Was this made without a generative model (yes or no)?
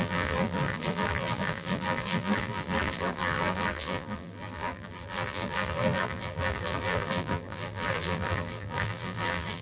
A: no